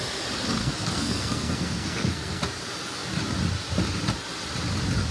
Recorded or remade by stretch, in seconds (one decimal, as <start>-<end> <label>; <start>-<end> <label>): 0.0-0.6 recorded; 0.6-2.4 remade; 2.4-5.1 recorded